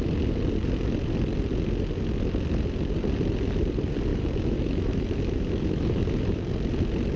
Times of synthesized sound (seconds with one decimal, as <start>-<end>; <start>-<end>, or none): 4.1-6.4